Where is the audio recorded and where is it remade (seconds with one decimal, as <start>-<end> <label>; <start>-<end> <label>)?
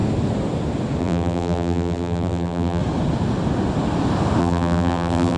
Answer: 0.0-1.0 recorded; 1.0-2.8 remade; 2.8-4.4 recorded; 4.4-5.4 remade